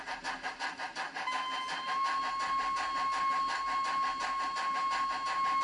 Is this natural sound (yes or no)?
yes